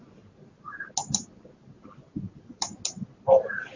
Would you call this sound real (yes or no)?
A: yes